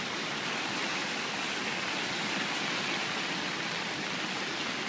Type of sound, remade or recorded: recorded